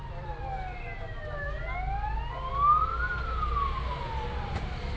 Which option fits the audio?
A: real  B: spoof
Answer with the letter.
A